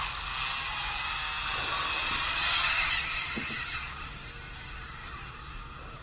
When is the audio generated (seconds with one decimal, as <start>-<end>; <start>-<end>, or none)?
2.0-4.1; 5.0-5.6